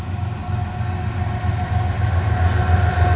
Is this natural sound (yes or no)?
yes